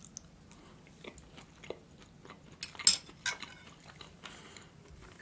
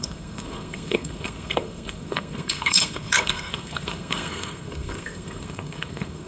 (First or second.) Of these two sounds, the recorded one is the first